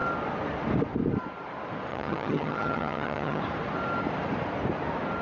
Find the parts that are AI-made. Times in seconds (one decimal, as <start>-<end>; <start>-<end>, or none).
1.9-3.4